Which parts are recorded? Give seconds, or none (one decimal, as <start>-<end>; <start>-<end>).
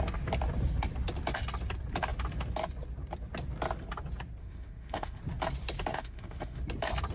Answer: 0.0-4.4; 5.2-5.9; 6.6-7.1